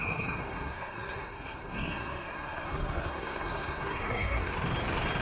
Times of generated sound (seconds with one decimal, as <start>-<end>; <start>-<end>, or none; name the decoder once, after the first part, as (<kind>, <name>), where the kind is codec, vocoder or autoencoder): 0.0-4.5 (codec, SNAC)